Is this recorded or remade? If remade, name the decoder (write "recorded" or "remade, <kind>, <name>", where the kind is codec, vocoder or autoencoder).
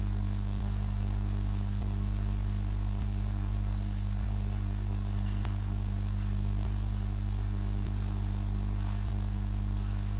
remade, codec, SNAC